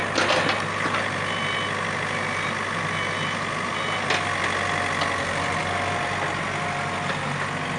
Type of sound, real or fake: real